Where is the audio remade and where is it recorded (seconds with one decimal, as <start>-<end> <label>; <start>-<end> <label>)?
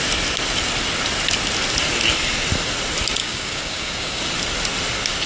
0.0-3.2 recorded; 3.2-4.2 remade; 4.2-5.3 recorded